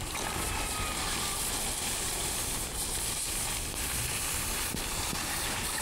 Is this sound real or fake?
real